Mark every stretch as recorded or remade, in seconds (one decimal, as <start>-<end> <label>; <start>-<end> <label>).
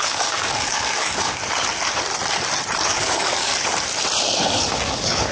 0.0-1.4 remade; 1.4-2.9 recorded; 2.9-3.5 remade; 3.5-4.2 recorded; 4.2-5.3 remade